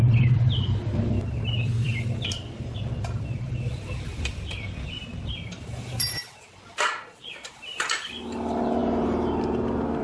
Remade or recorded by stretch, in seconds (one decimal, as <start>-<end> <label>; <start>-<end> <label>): 0.0-8.8 remade; 8.8-10.0 recorded